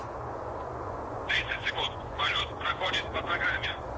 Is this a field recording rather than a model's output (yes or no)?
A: no